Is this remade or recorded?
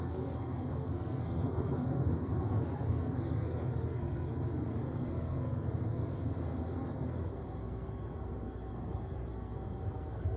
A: remade